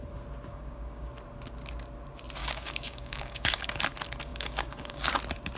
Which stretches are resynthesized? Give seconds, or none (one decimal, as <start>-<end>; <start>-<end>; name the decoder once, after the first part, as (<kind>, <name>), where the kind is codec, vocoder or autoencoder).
0.5-1.1 (codec, DAC); 2.4-3.8; 4.3-5.1